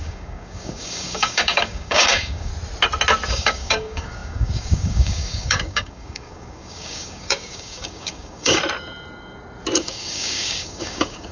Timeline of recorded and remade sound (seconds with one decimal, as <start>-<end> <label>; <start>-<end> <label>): 0.0-2.5 remade; 2.5-3.3 recorded; 3.3-8.6 remade; 8.6-9.8 recorded; 9.8-11.3 remade